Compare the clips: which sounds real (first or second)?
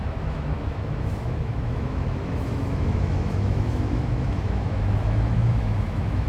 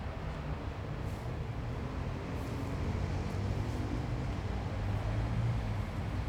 second